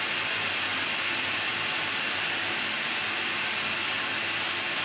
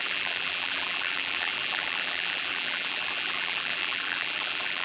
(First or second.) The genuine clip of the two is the first